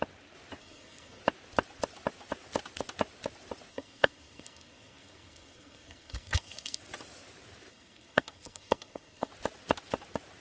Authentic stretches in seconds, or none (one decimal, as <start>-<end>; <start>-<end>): 0.0-0.6; 1.2-3.7; 6.8-7.7; 9.3-10.4